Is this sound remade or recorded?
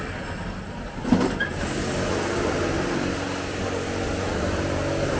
recorded